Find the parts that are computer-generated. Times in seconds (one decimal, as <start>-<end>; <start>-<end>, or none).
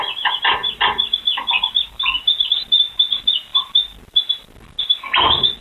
none